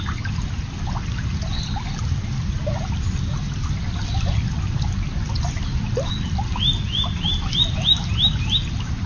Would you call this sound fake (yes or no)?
no